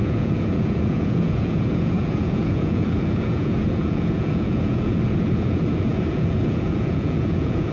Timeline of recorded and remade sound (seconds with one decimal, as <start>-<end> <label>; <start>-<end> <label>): 0.0-7.7 remade